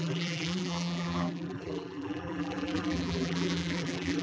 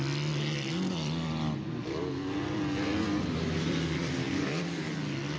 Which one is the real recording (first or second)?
second